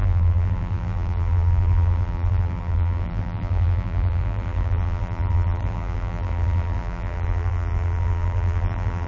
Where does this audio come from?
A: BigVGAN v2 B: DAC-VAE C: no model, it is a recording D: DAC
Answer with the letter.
A